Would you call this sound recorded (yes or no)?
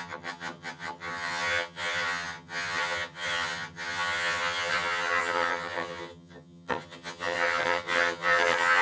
no